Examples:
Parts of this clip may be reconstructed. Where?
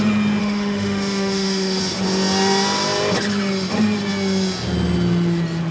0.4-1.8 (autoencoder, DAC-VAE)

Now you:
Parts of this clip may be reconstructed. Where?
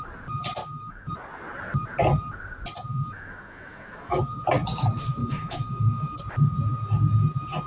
0.6-1.1 (autoencoder, DAC-VAE); 2.9-4.2; 5.2-6.2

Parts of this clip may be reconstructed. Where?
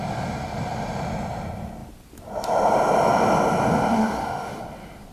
4.0-4.6 (autoencoder, DAC-VAE)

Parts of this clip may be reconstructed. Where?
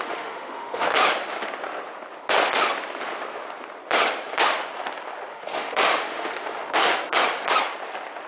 0.0-0.9 (autoencoder, DAC-VAE); 5.3-6.9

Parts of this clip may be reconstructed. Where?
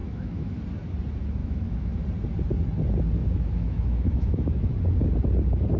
0.0-0.6 (autoencoder, DAC-VAE); 1.4-2.0; 3.2-4.7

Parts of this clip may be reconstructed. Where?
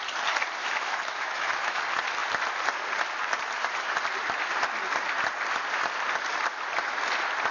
0.6-1.8 (autoencoder, DAC-VAE)